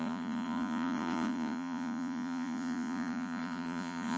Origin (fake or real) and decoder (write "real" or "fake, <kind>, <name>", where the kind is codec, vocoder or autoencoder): fake, vocoder, Vocos